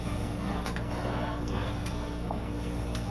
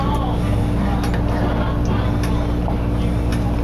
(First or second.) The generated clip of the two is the first